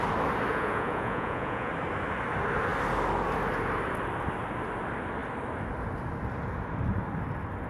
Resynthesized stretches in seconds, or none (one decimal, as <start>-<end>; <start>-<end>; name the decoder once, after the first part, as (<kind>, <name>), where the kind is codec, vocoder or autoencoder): 0.5-1.7 (vocoder, Vocos)